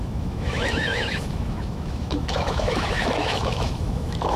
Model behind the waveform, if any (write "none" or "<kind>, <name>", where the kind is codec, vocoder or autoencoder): autoencoder, DAC-VAE